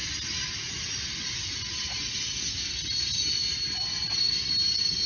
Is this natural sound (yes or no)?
yes